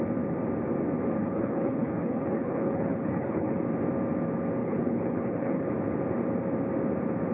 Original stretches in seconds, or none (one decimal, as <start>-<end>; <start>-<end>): 0.0-1.2; 3.6-4.6; 5.7-7.3